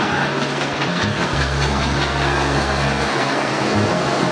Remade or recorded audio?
remade